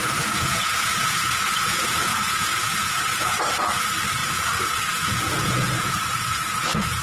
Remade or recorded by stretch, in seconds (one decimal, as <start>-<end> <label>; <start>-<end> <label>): 0.0-3.4 remade; 3.4-4.2 recorded; 4.2-7.0 remade

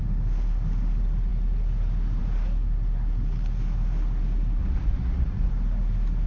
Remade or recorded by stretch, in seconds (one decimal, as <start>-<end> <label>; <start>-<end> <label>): 0.0-4.6 recorded; 4.6-5.5 remade; 5.5-6.3 recorded